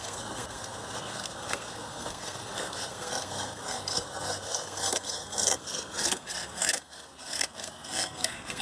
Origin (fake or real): fake